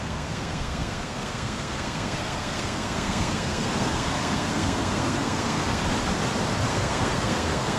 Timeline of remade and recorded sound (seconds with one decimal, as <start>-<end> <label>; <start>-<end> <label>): 0.0-5.8 remade; 5.8-6.7 recorded; 6.7-7.8 remade